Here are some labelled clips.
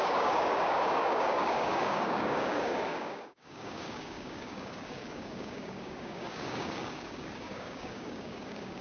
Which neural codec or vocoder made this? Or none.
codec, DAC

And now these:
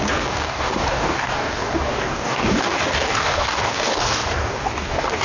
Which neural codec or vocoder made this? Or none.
codec, DAC